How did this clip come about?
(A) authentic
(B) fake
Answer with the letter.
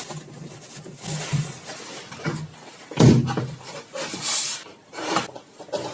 A